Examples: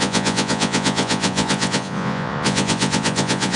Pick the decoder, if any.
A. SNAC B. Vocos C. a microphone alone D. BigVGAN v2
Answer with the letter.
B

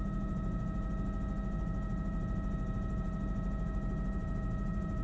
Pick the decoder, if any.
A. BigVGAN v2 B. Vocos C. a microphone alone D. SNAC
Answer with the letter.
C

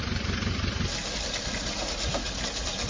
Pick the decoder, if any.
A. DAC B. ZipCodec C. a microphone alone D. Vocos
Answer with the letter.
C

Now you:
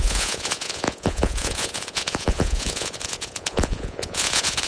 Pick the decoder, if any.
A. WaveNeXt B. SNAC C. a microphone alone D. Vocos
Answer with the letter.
D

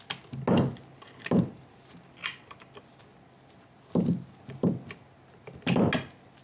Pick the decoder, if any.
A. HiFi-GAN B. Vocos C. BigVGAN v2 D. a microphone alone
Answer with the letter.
D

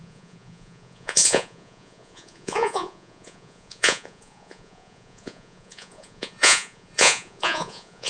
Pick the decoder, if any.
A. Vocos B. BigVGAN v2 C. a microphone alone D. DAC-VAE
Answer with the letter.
A